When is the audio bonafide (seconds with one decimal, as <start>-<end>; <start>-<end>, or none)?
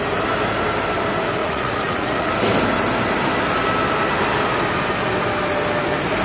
0.0-1.4; 2.3-6.2